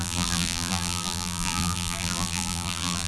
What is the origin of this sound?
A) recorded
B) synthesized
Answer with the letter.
B